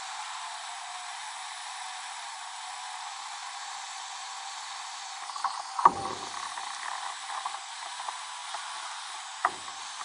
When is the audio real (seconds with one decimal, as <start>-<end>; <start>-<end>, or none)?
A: 0.0-3.4; 4.7-8.4; 9.1-10.0